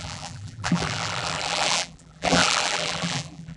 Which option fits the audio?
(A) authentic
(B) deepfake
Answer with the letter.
B